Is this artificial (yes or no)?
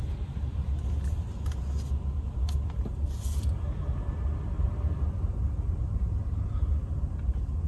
no